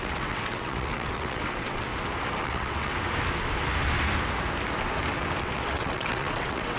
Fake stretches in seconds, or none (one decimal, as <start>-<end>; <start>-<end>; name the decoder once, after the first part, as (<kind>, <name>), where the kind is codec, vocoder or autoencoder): 0.0-1.9 (vocoder, WaveNeXt); 2.4-2.9; 5.4-6.8